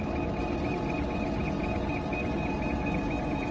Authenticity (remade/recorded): recorded